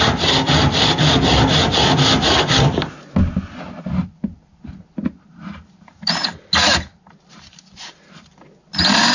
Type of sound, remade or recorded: recorded